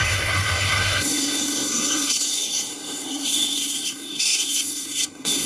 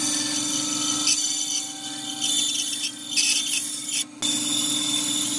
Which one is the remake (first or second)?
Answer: first